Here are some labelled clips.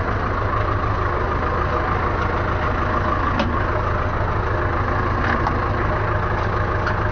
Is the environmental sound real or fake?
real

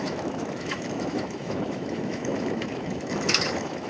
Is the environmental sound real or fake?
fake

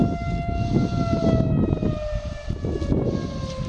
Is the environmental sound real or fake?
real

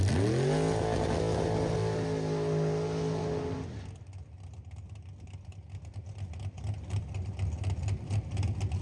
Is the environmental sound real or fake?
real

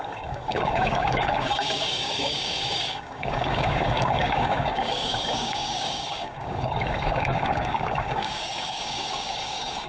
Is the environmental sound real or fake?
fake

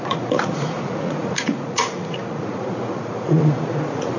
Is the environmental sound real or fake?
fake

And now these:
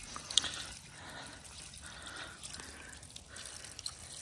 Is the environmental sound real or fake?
real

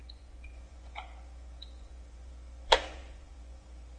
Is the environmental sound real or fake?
fake